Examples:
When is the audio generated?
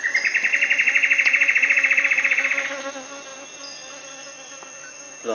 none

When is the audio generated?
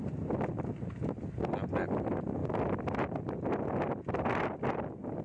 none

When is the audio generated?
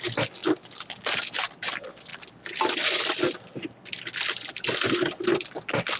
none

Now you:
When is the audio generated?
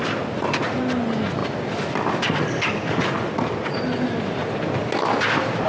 none